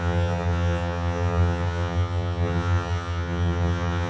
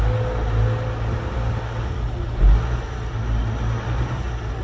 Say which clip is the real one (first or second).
second